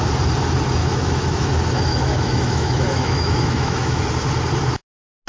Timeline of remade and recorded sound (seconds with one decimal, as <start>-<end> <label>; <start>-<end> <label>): 0.0-0.8 recorded; 0.8-1.5 remade; 1.5-1.9 recorded; 1.9-4.0 remade; 4.0-5.3 recorded